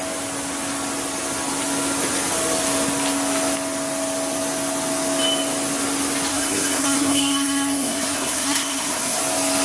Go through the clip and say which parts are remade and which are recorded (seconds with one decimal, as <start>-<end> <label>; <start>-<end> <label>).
0.0-6.3 recorded; 6.3-9.2 remade; 9.2-9.6 recorded

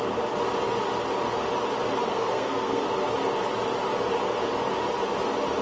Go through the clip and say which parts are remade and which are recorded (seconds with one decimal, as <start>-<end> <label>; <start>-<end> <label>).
0.0-2.1 recorded; 2.1-2.8 remade; 2.8-5.6 recorded

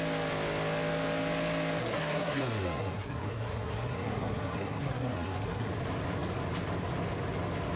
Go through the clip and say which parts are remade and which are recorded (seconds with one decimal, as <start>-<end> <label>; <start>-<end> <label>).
0.0-1.8 recorded; 1.8-5.7 remade; 5.7-7.8 recorded

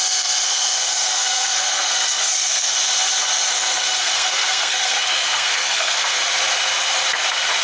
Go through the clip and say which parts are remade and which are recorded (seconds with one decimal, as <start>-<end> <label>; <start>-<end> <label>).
0.0-2.7 remade; 2.7-3.5 recorded; 3.5-6.2 remade; 6.2-7.6 recorded

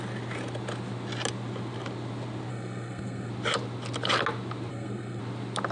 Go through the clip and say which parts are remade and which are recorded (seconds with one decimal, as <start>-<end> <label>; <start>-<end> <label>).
0.0-2.5 recorded; 2.5-3.3 remade; 3.3-4.7 recorded; 4.7-5.2 remade; 5.2-5.7 recorded

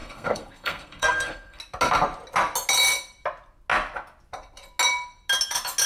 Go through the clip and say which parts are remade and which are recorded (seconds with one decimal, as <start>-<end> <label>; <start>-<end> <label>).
0.0-1.6 remade; 1.6-5.9 recorded